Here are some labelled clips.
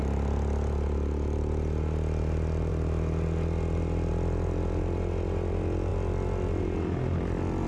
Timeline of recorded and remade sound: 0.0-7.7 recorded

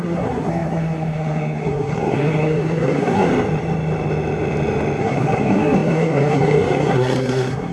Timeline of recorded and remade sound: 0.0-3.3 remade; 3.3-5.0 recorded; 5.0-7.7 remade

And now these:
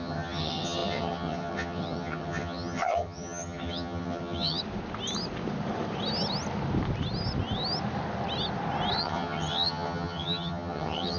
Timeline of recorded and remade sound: 0.0-4.6 remade; 4.6-9.0 recorded; 9.0-11.2 remade

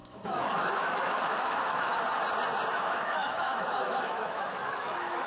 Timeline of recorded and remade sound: 0.0-1.9 remade; 1.9-2.8 recorded; 2.8-5.3 remade

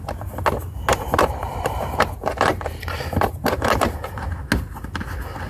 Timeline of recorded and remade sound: 0.0-0.9 recorded; 0.9-4.2 remade; 4.2-5.5 recorded

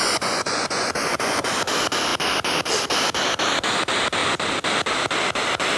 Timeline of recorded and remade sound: 0.0-1.5 remade; 1.5-5.8 recorded

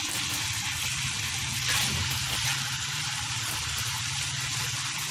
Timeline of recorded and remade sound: 0.0-2.5 recorded; 2.5-3.0 remade; 3.0-5.1 recorded